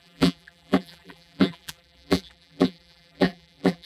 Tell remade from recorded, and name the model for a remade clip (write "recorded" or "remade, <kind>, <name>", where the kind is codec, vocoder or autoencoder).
remade, vocoder, BigVGAN v2